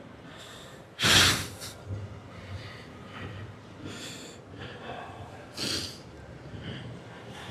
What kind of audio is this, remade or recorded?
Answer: recorded